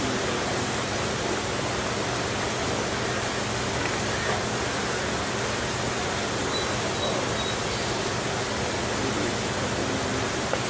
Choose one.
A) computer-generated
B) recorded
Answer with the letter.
B